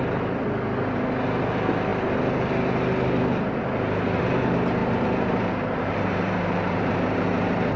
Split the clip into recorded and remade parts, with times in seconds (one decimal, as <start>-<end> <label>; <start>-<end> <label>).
0.0-4.8 recorded; 4.8-7.8 remade